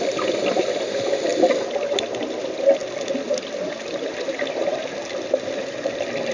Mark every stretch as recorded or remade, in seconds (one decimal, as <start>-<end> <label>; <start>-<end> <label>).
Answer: 0.0-6.3 recorded